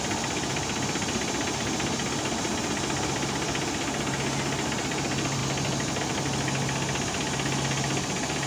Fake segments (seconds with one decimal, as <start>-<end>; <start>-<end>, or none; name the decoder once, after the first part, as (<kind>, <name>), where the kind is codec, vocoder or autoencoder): none